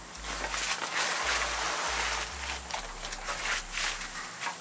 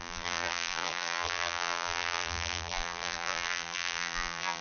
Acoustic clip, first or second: first